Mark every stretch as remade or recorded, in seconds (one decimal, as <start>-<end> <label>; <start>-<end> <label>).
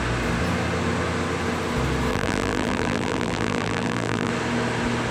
0.0-2.1 recorded; 2.1-4.3 remade; 4.3-5.1 recorded